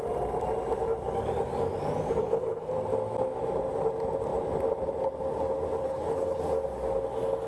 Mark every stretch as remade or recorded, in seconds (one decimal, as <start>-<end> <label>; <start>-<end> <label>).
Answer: 0.0-2.2 recorded; 2.2-2.7 remade; 2.7-5.8 recorded; 5.8-6.4 remade; 6.4-7.5 recorded